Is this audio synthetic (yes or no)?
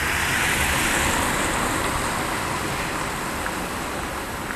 no